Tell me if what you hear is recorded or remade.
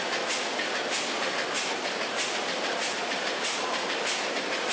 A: recorded